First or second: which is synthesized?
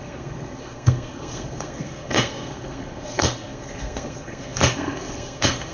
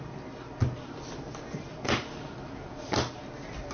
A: first